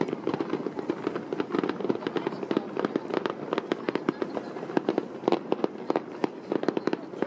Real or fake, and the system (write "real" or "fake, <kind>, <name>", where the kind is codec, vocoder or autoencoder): real